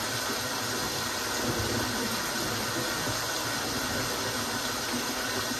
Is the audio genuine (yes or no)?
yes